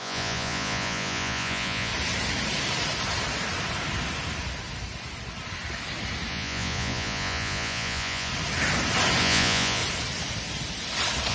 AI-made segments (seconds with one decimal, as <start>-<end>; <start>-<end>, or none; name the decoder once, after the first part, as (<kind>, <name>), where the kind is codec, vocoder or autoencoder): 0.0-1.9 (vocoder, Vocos); 6.3-8.3; 9.2-9.8